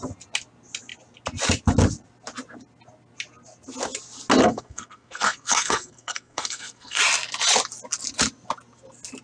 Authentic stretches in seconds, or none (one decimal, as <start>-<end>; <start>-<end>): 0.0-4.4; 7.0-9.2